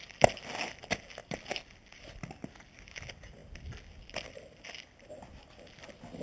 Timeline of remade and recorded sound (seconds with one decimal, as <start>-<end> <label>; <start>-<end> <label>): 0.0-1.2 recorded; 1.2-2.1 remade; 2.1-6.2 recorded